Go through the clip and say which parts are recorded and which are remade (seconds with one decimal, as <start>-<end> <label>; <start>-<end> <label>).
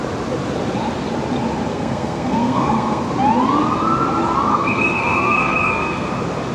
0.0-1.7 recorded; 1.7-3.0 remade; 3.0-4.5 recorded; 4.5-6.1 remade; 6.1-6.5 recorded